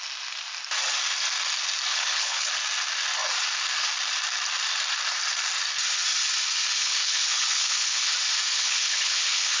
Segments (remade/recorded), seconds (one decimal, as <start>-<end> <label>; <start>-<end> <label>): 0.0-1.9 recorded; 1.9-2.5 remade; 2.5-6.8 recorded; 6.8-8.1 remade; 8.1-8.5 recorded; 8.5-9.6 remade